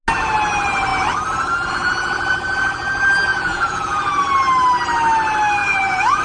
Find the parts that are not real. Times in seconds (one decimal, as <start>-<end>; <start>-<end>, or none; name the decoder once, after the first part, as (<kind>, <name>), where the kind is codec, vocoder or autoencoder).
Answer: 3.3-4.2 (vocoder, Vocos); 5.6-6.2

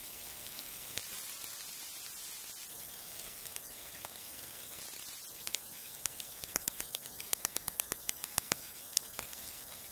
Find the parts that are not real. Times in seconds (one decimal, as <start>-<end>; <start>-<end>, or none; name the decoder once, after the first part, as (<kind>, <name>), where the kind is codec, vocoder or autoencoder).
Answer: 0.0-1.0 (codec, SNAC); 2.7-4.8; 5.3-9.9

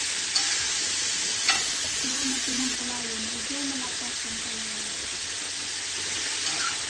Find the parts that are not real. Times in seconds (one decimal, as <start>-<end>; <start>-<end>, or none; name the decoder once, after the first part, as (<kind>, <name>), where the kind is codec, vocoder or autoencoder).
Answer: 1.3-2.8 (vocoder, WaveNeXt); 5.0-5.6